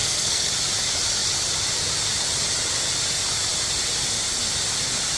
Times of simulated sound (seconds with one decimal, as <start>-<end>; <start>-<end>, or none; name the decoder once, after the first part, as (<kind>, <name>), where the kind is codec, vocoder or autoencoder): 0.0-0.5 (codec, SNAC)